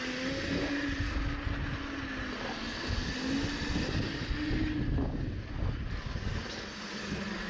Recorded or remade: recorded